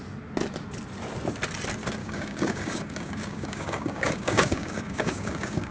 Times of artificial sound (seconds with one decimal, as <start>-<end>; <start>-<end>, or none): 2.0-5.7